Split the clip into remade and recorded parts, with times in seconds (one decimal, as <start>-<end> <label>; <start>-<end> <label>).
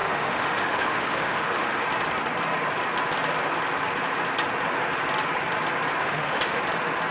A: 0.0-1.8 remade; 1.8-6.0 recorded; 6.0-6.6 remade; 6.6-7.1 recorded